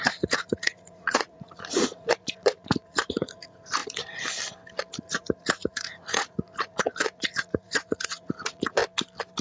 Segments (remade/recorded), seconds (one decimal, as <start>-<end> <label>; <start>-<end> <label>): 0.0-3.8 remade; 3.8-4.9 recorded; 4.9-8.8 remade; 8.8-9.4 recorded